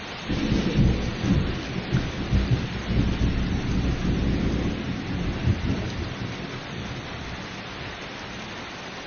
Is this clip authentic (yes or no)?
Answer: yes